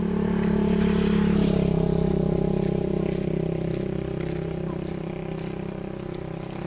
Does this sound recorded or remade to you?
recorded